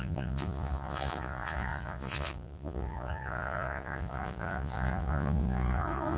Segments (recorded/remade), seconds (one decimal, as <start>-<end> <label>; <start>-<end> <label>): 0.0-6.2 remade